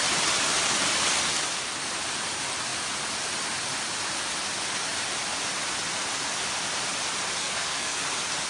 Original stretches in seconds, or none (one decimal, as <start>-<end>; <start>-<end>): 0.0-7.4; 8.0-8.5